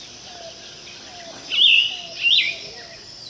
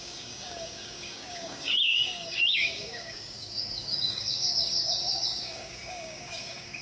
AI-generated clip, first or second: second